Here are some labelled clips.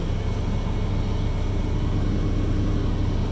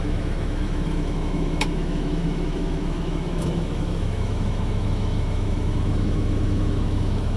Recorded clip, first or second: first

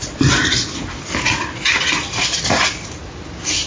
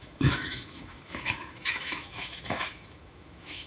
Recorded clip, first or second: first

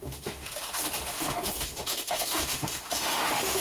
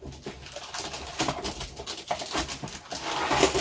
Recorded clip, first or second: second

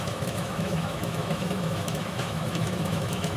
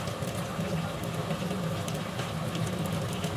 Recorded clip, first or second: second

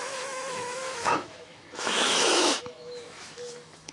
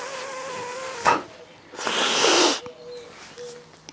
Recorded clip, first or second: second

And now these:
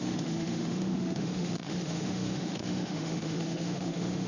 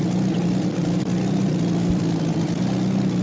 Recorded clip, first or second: second